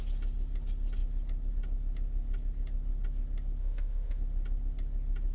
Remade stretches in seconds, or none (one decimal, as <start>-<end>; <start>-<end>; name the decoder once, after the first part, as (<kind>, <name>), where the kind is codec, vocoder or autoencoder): 3.6-4.2 (autoencoder, DAC-VAE)